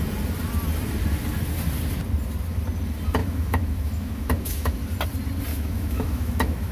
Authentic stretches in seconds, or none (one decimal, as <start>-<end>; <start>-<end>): 0.0-3.2; 4.7-5.5